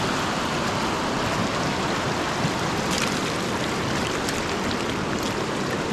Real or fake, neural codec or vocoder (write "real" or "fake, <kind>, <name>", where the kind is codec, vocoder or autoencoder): real